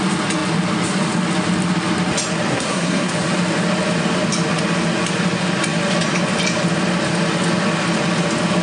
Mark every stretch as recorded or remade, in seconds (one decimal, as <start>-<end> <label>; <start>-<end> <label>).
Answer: 0.0-2.5 recorded; 2.5-3.1 remade; 3.1-8.6 recorded